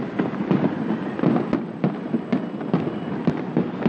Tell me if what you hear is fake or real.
real